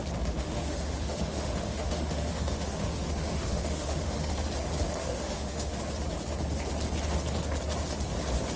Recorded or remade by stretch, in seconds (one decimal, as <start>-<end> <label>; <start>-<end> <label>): 0.0-0.4 recorded; 0.4-4.3 remade; 4.3-5.0 recorded; 5.0-5.8 remade; 5.8-8.6 recorded

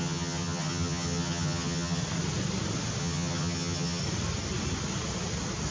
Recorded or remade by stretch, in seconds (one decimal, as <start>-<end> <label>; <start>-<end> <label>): 0.0-2.0 remade; 2.0-3.0 recorded; 3.0-4.0 remade; 4.0-5.7 recorded